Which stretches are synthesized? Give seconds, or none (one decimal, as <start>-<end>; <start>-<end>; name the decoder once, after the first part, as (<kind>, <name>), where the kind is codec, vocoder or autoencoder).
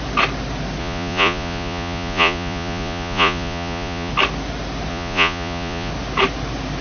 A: 0.8-4.1 (vocoder, Vocos); 4.9-5.9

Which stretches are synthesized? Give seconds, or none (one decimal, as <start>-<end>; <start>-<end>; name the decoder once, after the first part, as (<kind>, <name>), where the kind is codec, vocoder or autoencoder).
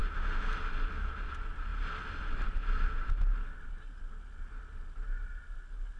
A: none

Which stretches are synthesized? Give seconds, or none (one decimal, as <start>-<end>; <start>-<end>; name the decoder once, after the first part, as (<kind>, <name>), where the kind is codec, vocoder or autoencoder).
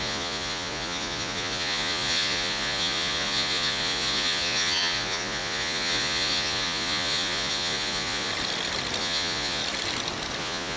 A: 0.0-8.3 (vocoder, Vocos); 9.0-9.6; 10.4-10.8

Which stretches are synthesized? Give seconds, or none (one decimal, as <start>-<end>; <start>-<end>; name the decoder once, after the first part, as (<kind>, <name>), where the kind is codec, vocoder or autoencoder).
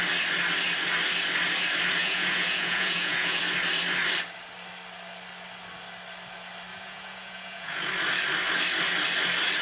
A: 2.0-3.4 (vocoder, Vocos); 6.7-7.9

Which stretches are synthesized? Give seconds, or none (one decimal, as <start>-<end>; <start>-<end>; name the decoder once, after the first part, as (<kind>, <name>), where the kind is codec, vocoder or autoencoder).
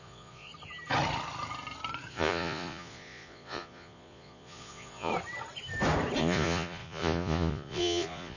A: 0.0-0.5 (vocoder, Vocos); 2.1-5.1; 6.2-8.4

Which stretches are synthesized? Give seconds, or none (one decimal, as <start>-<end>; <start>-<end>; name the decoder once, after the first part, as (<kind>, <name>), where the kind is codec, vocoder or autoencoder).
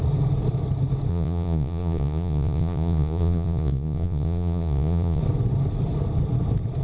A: 1.1-5.2 (vocoder, Vocos)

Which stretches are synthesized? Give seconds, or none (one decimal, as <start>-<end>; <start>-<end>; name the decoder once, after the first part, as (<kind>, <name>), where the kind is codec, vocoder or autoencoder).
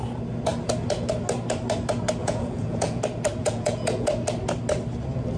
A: 2.2-3.0 (vocoder, Vocos); 3.4-4.1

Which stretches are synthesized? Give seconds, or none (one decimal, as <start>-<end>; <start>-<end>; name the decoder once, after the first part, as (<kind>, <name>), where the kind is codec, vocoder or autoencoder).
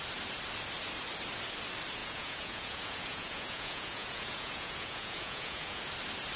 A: 2.0-5.8 (vocoder, Vocos)